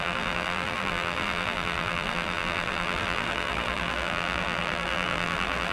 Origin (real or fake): fake